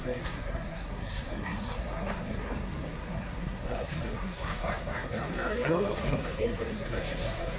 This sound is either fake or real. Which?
fake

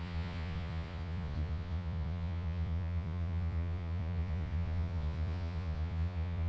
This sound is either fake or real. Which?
fake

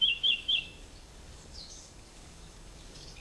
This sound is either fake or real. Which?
fake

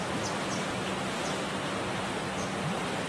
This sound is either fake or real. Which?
real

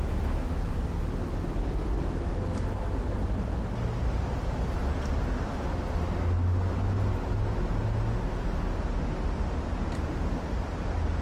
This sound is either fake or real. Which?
real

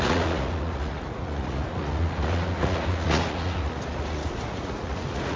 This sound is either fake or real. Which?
fake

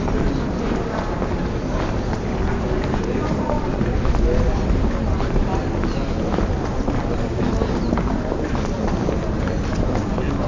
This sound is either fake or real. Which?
real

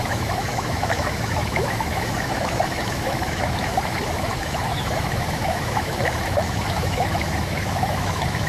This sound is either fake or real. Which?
fake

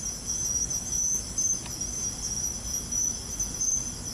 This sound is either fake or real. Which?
real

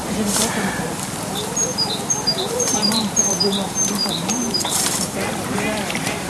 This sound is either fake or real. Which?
fake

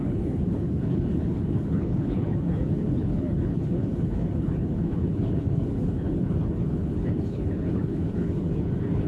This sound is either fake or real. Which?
fake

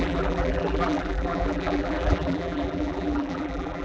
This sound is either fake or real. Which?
fake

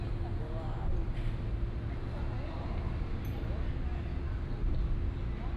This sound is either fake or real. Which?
real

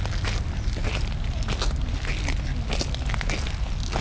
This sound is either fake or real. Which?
real